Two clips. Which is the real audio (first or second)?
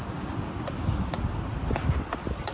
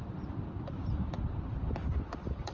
first